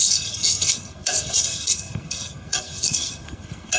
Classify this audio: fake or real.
fake